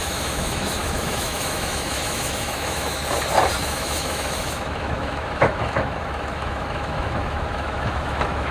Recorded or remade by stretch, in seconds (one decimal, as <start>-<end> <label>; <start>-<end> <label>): 0.0-3.0 remade; 3.0-3.6 recorded; 3.6-8.5 remade